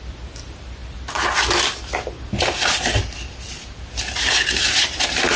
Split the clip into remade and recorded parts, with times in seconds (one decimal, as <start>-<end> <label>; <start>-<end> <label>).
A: 0.0-5.4 recorded